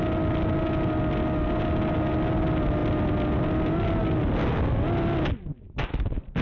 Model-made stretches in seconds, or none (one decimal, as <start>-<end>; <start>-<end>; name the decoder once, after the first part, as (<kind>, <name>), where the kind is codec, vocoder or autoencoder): none